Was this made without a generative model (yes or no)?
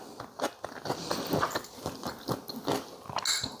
yes